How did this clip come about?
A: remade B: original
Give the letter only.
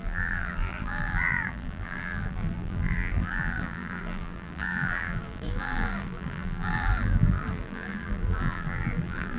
A